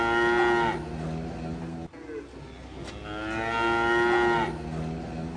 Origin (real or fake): real